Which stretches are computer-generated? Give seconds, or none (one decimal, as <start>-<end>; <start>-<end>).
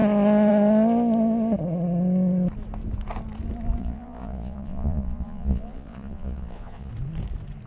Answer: 3.8-6.9